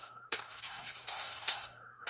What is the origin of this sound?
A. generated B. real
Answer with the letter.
A